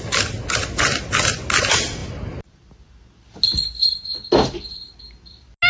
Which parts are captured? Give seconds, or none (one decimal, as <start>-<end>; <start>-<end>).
0.0-5.7